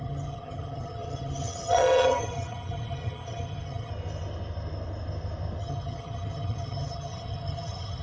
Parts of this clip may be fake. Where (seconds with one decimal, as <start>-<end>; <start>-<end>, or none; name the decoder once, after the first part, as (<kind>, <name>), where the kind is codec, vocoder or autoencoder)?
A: 0.0-3.9 (vocoder, HiFi-GAN); 5.6-8.0